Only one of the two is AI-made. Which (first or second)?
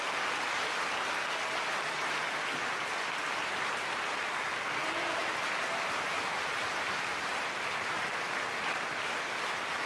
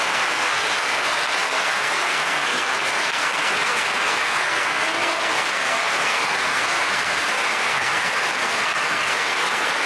second